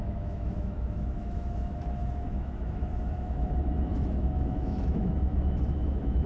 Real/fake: fake